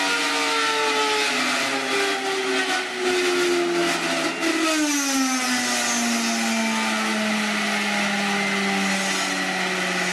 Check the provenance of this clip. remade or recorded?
recorded